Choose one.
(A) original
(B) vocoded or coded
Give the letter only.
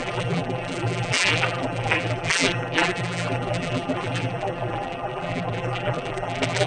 B